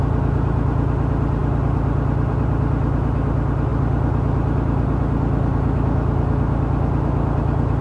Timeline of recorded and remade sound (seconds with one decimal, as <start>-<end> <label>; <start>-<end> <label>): 0.0-7.8 recorded